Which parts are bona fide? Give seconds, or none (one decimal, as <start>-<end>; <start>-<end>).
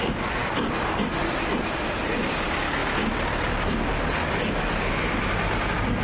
0.0-6.0